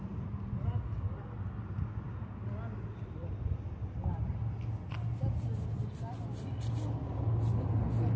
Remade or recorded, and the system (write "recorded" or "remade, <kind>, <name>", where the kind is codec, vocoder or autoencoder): recorded